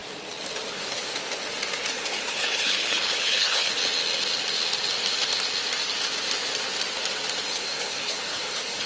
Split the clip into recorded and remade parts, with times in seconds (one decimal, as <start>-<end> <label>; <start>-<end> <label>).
0.0-0.7 recorded; 0.7-1.1 remade; 1.1-1.9 recorded; 1.9-3.8 remade; 3.8-7.5 recorded; 7.5-8.9 remade